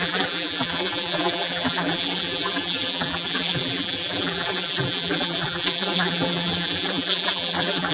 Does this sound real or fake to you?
fake